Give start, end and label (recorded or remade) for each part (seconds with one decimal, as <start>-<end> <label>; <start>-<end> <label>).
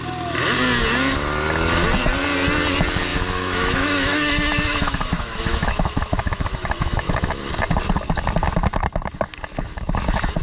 0.0-3.1 recorded; 3.1-7.4 remade; 7.4-10.4 recorded